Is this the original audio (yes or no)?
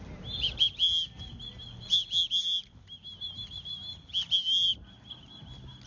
yes